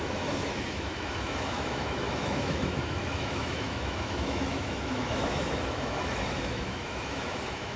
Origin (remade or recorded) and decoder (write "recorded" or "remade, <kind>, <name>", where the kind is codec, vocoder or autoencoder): remade, autoencoder, DAC-VAE